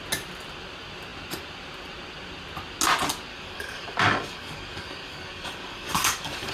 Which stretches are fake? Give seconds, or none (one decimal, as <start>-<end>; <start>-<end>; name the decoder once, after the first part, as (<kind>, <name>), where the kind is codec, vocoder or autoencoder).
3.3-6.5 (codec, DAC)